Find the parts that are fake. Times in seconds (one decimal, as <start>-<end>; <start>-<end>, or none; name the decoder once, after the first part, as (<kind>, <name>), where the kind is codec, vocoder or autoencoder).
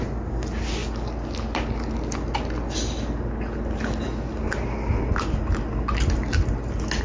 none